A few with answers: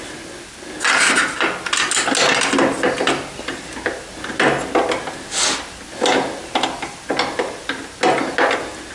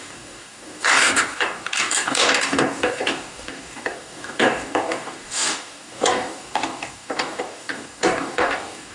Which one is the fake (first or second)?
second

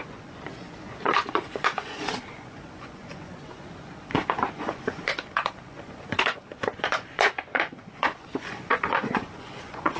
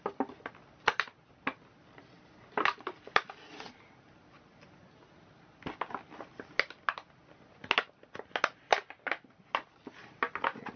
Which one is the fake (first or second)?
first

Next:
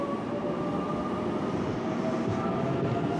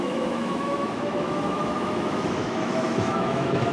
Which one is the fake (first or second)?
second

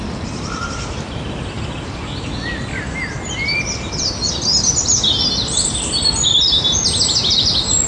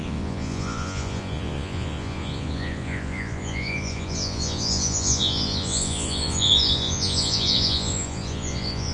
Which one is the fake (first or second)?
second